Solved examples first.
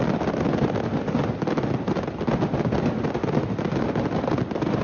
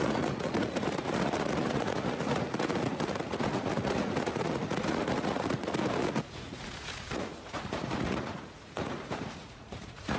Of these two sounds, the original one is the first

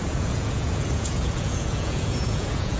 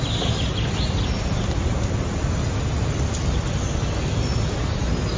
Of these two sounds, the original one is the second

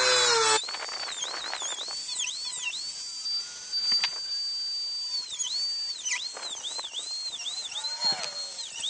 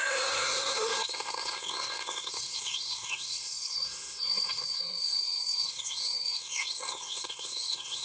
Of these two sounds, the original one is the first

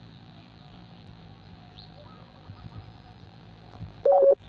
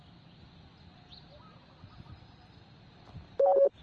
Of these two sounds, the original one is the second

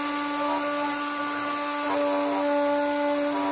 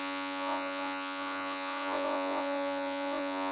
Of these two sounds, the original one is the first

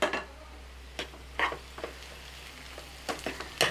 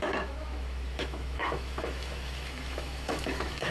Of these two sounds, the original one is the first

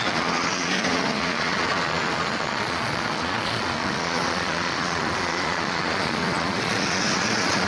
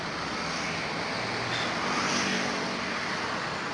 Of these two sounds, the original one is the second